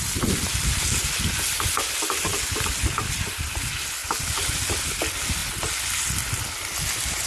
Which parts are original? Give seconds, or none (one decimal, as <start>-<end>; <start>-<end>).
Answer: 0.0-7.3